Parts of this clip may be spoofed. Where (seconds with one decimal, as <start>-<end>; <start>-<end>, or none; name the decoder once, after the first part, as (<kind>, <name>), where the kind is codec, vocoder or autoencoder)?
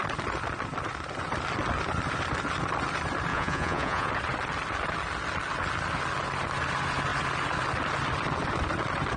3.3-4.1 (vocoder, Vocos)